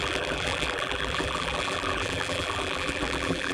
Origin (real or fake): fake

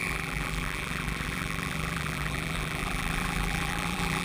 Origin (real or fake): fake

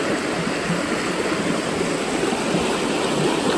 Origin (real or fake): real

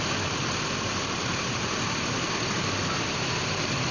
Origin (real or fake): fake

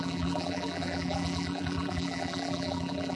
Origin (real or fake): fake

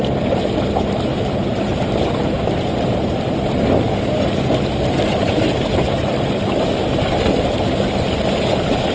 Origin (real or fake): real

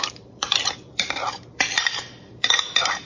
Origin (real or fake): fake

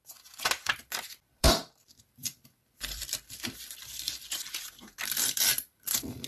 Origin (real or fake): fake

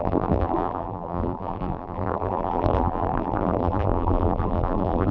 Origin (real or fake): fake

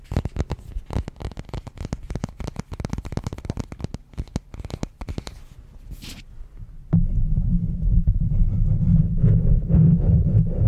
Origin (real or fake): real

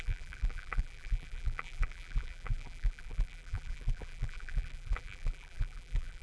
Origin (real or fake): fake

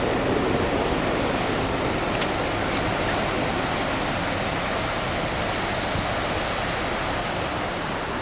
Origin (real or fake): real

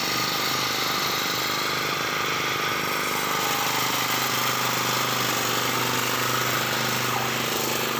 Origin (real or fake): real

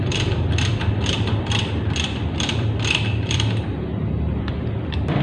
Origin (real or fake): fake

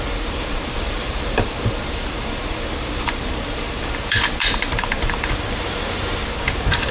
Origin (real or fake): fake